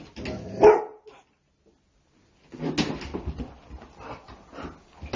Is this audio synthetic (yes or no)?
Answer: no